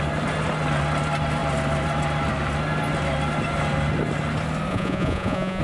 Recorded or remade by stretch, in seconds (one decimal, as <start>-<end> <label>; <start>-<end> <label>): 0.0-4.7 recorded; 4.7-5.6 remade